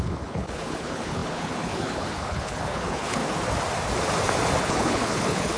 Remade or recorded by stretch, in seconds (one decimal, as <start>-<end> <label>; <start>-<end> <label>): 0.0-3.2 remade; 3.2-4.6 recorded; 4.6-5.6 remade